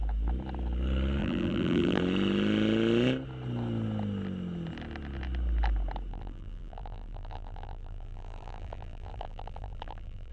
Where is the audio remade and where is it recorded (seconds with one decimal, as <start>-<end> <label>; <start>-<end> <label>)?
0.0-1.2 recorded; 1.2-2.0 remade; 2.0-6.1 recorded; 6.1-10.3 remade